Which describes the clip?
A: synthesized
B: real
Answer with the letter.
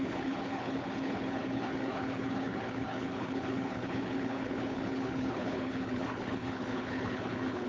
A